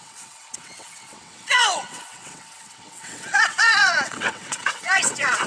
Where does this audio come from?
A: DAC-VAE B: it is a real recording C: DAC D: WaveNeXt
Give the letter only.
D